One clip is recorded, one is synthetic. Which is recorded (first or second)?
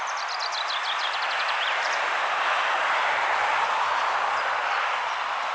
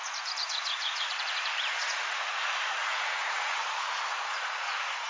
first